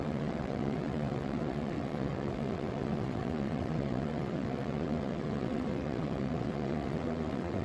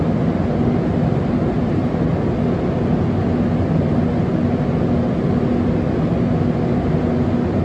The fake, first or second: first